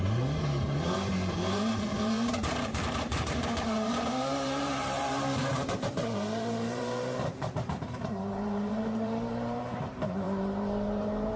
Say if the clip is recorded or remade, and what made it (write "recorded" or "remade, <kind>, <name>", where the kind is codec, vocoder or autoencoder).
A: remade, vocoder, BigVGAN v2